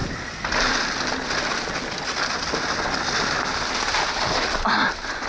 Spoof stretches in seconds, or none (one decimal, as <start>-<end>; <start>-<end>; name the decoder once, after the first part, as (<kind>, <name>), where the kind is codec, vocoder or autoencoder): none